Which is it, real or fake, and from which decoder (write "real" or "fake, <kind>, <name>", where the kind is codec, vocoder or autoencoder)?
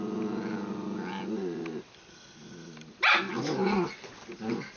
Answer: real